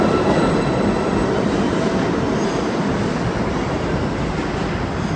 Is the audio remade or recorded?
recorded